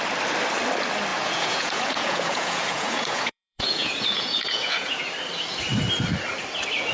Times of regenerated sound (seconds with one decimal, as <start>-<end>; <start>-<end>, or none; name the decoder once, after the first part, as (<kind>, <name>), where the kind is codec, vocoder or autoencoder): 1.1-5.0 (vocoder, Vocos)